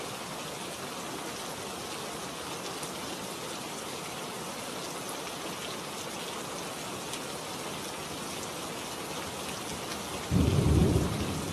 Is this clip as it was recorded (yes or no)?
yes